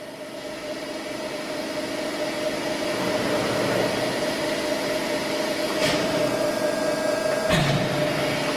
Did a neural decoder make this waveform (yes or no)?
no